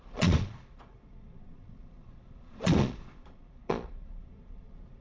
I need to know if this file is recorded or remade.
remade